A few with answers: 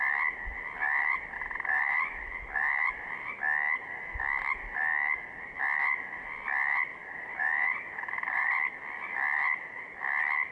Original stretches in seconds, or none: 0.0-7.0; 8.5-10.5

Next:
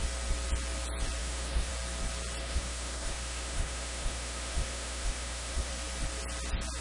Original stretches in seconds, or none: 0.0-1.2; 1.7-2.4; 5.7-6.8

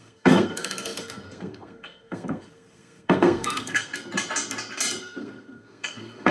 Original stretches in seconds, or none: 3.9-5.0

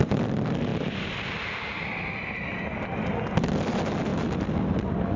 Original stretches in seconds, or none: 0.0-5.2

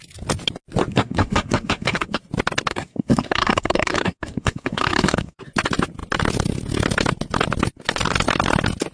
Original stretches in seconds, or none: 0.0-0.9; 2.2-2.7; 5.4-8.9